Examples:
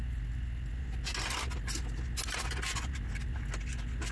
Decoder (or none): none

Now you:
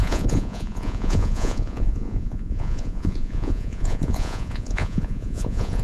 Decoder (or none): vocoder, Vocos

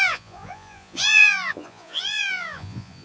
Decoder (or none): vocoder, Vocos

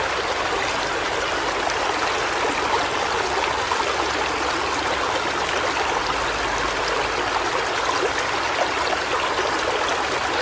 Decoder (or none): none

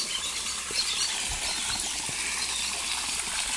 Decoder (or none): none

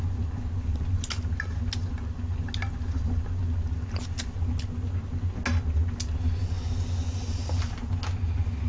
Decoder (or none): none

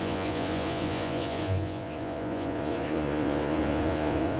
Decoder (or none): vocoder, Vocos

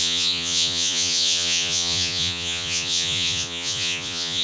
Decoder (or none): vocoder, Vocos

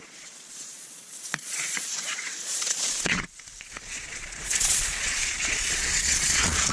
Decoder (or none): vocoder, Vocos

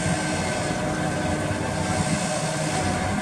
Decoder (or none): none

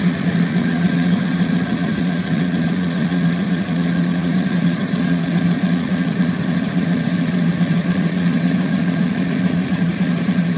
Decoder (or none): vocoder, Vocos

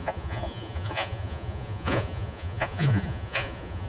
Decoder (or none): vocoder, Vocos